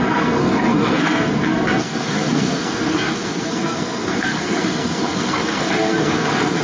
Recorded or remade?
remade